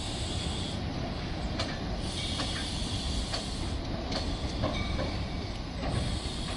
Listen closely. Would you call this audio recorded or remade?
recorded